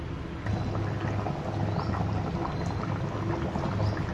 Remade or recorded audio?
recorded